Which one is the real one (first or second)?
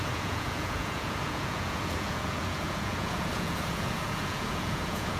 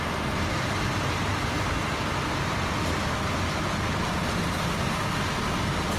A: second